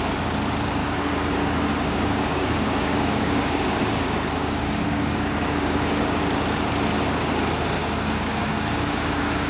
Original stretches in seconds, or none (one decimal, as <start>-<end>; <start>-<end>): 0.0-0.8; 4.0-4.4; 6.2-7.8